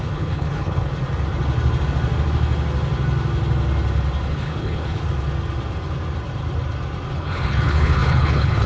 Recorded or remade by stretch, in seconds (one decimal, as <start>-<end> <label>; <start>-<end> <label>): 0.0-0.9 remade; 0.9-4.3 recorded; 4.3-5.0 remade; 5.0-7.1 recorded; 7.1-8.7 remade